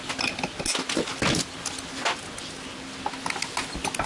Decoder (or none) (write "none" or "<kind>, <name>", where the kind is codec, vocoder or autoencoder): none